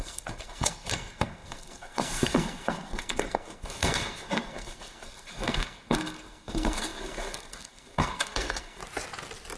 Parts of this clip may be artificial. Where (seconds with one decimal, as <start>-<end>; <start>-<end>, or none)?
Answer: 0.0-8.8